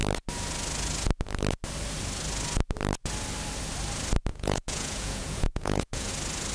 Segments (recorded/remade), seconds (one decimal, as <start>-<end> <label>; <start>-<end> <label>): 0.0-4.3 recorded; 4.3-6.1 remade; 6.1-6.5 recorded